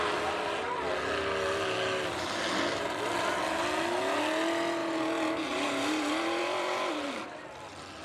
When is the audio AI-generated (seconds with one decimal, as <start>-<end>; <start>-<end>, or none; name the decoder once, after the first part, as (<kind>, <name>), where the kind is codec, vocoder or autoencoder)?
4.8-7.4 (vocoder, BigVGAN v2)